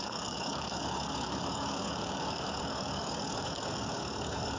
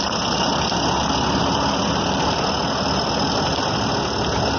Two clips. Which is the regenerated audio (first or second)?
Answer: first